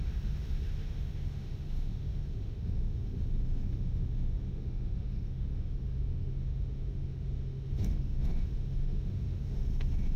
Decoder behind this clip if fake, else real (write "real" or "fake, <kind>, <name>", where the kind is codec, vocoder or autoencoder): fake, autoencoder, DAC-VAE